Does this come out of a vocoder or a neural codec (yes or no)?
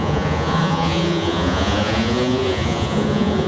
yes